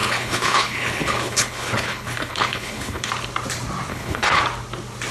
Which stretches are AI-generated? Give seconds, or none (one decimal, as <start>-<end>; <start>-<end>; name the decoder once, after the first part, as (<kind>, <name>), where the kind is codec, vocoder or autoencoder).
0.0-3.1 (codec, HILCodec); 3.9-4.4